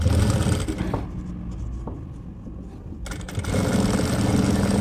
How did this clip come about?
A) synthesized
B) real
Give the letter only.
B